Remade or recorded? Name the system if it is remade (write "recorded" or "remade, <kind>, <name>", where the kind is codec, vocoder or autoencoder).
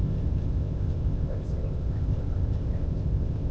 remade, codec, ZipCodec